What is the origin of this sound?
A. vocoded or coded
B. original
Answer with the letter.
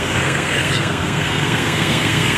A